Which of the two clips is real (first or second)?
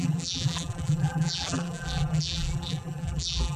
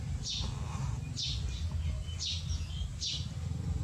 second